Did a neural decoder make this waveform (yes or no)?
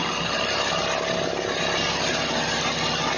no